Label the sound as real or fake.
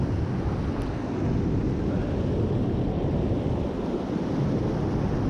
real